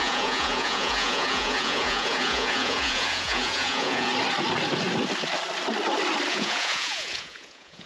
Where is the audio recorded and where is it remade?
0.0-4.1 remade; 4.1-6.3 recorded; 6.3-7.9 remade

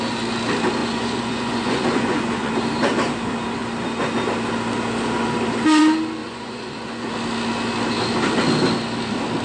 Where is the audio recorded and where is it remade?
0.0-0.8 recorded; 0.8-2.5 remade; 2.5-6.2 recorded; 6.2-7.1 remade; 7.1-9.4 recorded

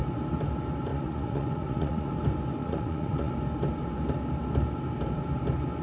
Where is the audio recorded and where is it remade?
0.0-0.9 recorded; 0.9-2.1 remade; 2.1-2.6 recorded; 2.6-3.3 remade; 3.3-5.8 recorded

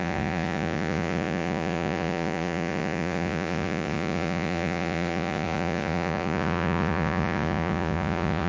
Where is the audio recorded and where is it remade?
0.0-8.5 remade

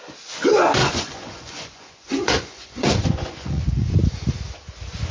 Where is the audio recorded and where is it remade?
0.0-0.8 recorded; 0.8-3.9 remade; 3.9-5.1 recorded

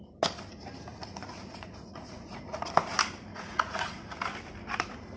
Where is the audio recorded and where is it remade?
0.0-0.9 recorded; 0.9-2.7 remade; 2.7-3.3 recorded; 3.3-4.2 remade; 4.2-5.2 recorded

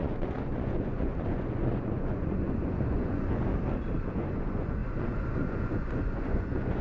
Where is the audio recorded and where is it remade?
0.0-3.5 remade; 3.5-4.1 recorded; 4.1-6.8 remade